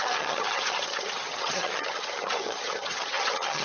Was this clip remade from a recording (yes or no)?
yes